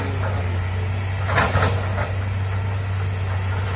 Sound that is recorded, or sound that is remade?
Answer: recorded